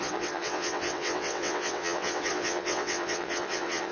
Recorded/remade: remade